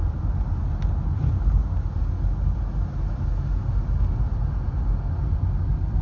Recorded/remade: recorded